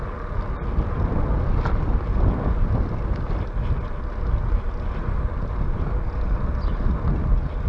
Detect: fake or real real